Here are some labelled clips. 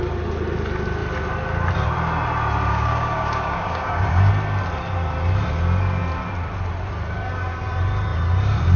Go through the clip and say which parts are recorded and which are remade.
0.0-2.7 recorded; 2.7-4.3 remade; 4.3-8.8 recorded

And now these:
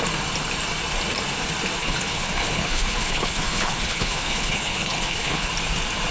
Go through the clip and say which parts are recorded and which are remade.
0.0-1.8 recorded; 1.8-5.5 remade; 5.5-6.1 recorded